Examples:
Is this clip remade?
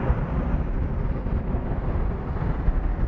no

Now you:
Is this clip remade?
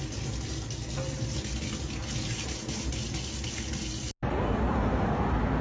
no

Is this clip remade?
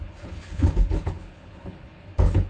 yes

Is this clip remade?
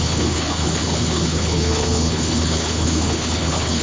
yes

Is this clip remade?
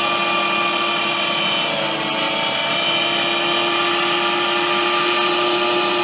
no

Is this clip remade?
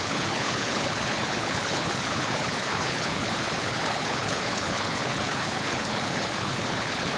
yes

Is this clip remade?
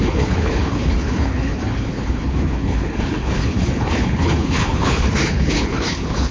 yes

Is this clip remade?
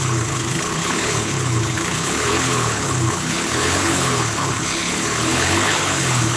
yes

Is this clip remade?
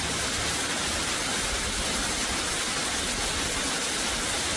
no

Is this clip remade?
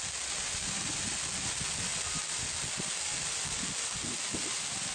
no